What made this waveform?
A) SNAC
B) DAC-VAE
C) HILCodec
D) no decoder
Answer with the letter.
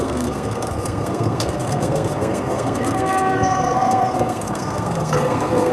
A